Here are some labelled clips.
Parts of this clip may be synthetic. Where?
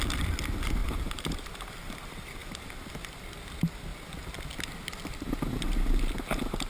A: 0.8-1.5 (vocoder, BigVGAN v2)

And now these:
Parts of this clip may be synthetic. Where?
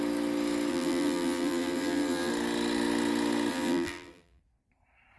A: 0.7-2.3 (vocoder, BigVGAN v2); 3.5-4.4